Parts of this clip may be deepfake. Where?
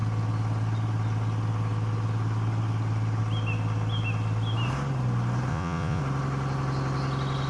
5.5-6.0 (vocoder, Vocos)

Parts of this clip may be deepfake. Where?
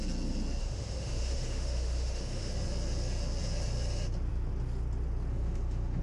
0.6-2.5 (autoencoder, DAC-VAE); 5.3-6.0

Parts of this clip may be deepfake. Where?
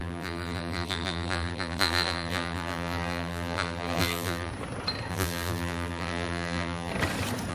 0.0-4.5 (vocoder, BigVGAN v2); 5.1-6.9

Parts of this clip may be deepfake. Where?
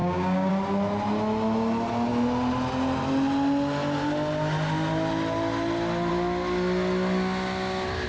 0.0-0.5 (codec, DAC)